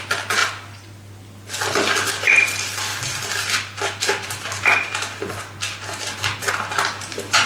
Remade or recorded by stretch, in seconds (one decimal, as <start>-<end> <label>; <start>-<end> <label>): 0.0-7.5 recorded